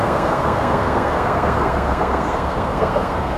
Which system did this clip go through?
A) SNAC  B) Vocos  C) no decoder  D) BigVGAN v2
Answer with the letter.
A